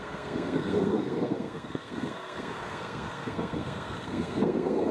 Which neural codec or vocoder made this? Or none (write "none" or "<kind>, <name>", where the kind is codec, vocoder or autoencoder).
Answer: codec, SNAC